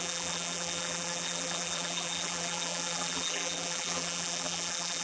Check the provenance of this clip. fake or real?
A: fake